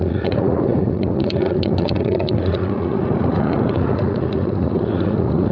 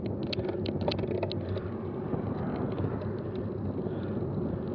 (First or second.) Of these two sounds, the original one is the second